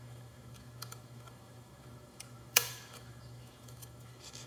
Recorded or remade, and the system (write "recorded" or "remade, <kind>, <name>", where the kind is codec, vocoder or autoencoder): remade, autoencoder, DAC-VAE